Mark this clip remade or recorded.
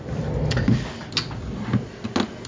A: recorded